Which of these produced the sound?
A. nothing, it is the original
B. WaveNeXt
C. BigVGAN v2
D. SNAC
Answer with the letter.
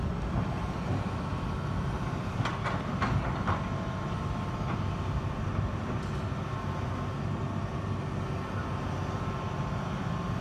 A